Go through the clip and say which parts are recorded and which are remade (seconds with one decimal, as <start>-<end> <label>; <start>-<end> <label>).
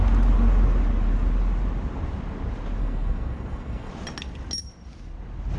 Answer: 0.0-2.8 recorded; 2.8-3.9 remade; 3.9-5.6 recorded